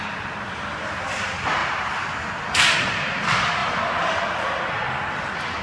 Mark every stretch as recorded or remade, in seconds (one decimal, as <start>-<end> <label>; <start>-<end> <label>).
0.0-5.6 recorded